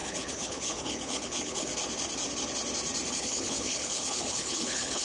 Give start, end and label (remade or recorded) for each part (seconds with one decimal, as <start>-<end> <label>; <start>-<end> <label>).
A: 0.0-1.7 remade; 1.7-3.1 recorded; 3.1-5.0 remade